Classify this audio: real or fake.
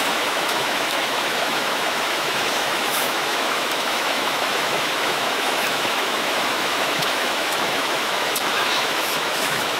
fake